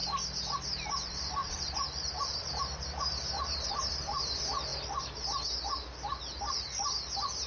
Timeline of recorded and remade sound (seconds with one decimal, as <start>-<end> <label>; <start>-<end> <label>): 0.0-1.4 recorded; 1.4-3.7 remade; 3.7-7.5 recorded